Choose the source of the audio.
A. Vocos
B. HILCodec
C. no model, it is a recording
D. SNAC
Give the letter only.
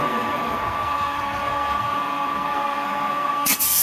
D